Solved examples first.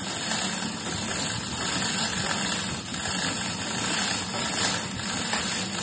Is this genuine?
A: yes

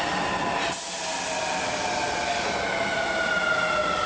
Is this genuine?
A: yes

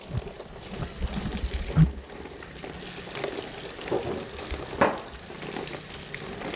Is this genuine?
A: yes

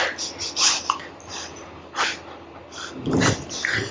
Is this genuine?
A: yes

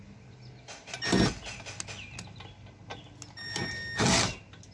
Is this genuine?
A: yes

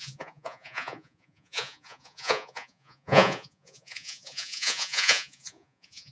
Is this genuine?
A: no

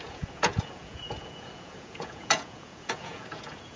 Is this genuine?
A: no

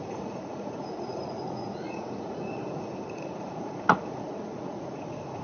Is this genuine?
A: no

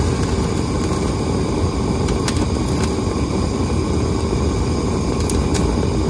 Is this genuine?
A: yes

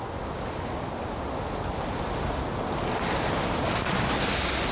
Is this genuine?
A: yes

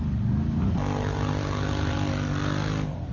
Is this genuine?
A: yes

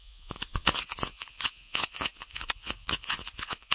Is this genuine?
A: no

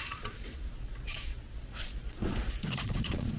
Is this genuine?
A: no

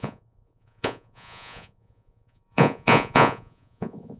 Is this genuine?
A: no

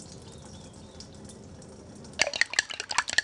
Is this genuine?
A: yes